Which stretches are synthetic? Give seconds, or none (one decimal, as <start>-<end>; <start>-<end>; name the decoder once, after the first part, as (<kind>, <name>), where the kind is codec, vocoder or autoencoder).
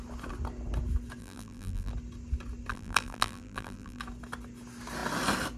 1.2-1.9 (vocoder, BigVGAN v2); 2.7-4.0